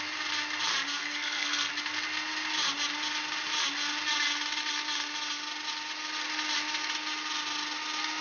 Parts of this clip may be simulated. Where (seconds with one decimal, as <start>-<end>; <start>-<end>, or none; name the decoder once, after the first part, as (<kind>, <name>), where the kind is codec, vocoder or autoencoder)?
1.0-1.7 (codec, SNAC)